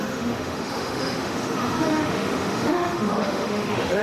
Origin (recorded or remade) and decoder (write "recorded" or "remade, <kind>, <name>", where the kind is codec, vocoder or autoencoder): remade, autoencoder, DAC-VAE